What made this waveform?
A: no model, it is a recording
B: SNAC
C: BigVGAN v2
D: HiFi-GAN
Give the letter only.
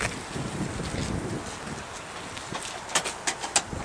A